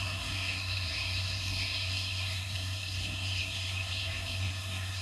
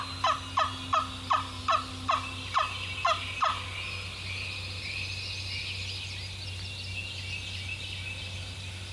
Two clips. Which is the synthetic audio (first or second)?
first